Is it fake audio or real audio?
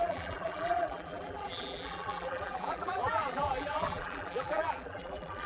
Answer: fake